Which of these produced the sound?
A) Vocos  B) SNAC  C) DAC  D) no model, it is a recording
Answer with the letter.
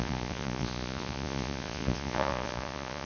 A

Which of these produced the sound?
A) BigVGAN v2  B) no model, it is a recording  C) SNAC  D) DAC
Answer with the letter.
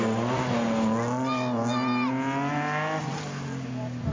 B